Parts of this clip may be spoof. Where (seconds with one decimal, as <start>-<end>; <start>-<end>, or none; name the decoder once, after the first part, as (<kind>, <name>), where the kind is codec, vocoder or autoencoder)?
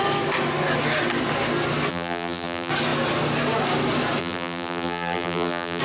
1.9-2.7 (vocoder, BigVGAN v2); 4.2-5.8